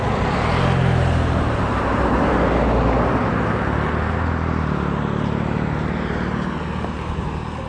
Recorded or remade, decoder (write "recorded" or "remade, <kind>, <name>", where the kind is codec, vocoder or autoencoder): recorded